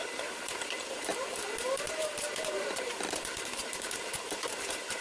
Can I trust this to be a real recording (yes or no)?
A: no